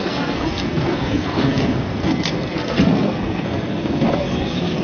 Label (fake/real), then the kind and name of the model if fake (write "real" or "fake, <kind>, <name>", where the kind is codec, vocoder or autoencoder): fake, codec, SNAC